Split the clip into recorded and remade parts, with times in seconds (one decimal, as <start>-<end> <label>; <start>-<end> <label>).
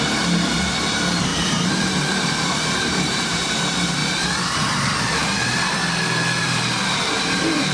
0.0-4.0 remade; 4.0-4.6 recorded; 4.6-5.8 remade; 5.8-6.4 recorded; 6.4-7.7 remade